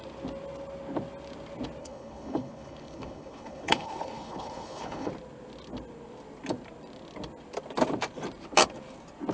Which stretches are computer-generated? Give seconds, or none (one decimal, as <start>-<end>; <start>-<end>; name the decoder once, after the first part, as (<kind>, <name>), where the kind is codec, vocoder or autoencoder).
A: 1.8-5.1 (codec, HILCodec)